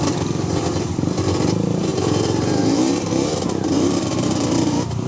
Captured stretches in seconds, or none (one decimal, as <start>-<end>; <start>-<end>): 0.0-1.9